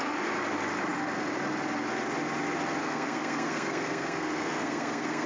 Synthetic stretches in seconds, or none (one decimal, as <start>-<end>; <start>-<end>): 2.8-5.3